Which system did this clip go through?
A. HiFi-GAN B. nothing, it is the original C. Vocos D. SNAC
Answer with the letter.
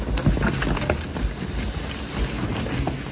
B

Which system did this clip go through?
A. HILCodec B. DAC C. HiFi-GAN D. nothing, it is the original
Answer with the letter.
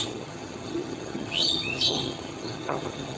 C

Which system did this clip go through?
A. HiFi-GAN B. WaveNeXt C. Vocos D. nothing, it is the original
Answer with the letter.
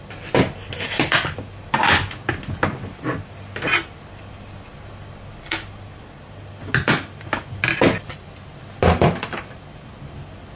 D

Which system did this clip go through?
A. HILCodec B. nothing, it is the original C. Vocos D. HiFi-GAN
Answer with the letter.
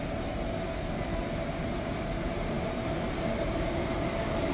B